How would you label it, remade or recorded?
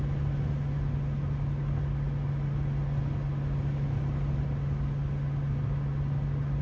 recorded